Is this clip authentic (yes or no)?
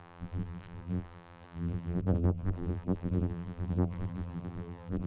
no